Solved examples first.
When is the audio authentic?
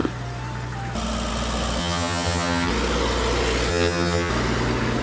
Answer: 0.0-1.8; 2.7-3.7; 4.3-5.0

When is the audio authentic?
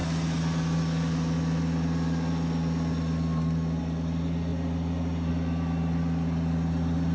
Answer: 0.0-7.1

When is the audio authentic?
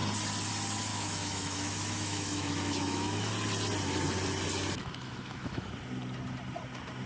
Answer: 0.0-0.9; 3.3-4.8; 5.7-7.1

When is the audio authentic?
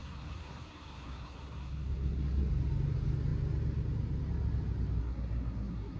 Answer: 2.5-5.0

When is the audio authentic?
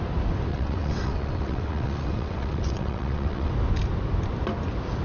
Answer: 0.0-0.5; 3.5-5.0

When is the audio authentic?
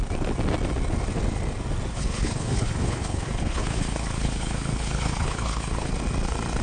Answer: 0.0-1.9; 5.9-6.6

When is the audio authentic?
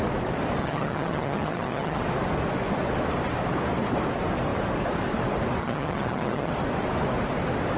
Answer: 0.0-0.6; 2.0-5.6; 6.5-7.8